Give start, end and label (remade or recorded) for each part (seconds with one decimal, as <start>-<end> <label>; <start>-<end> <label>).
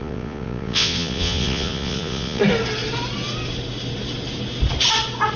0.0-2.4 remade; 2.4-5.4 recorded